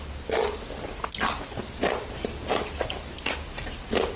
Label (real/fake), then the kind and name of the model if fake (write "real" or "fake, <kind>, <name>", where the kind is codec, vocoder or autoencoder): real